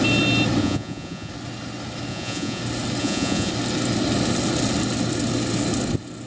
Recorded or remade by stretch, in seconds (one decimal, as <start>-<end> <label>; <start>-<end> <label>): 0.0-0.6 recorded; 0.6-1.3 remade; 1.3-2.1 recorded; 2.1-2.6 remade; 2.6-3.0 recorded; 3.0-3.5 remade; 3.5-6.3 recorded